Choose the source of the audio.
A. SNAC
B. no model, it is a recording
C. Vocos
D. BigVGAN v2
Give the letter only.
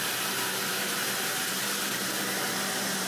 D